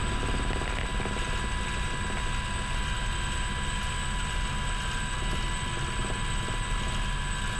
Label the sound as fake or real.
real